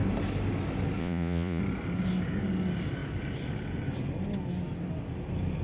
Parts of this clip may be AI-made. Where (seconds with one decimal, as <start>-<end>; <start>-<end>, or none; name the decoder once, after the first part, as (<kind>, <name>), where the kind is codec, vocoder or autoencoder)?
1.0-1.6 (vocoder, Vocos)